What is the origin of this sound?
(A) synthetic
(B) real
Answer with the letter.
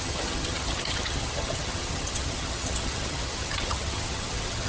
A